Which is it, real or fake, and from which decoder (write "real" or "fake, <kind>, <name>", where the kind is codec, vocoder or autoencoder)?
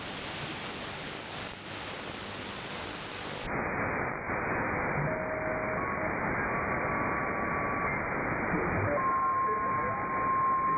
real